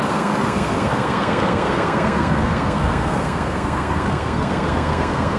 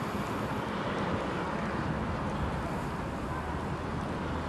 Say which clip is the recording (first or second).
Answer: second